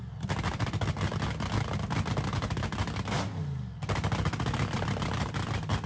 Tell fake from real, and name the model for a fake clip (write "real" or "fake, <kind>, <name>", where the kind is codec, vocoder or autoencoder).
real